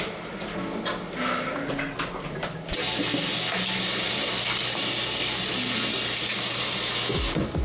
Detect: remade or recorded recorded